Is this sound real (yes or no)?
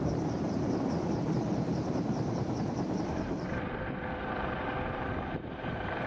no